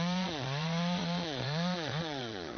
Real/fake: fake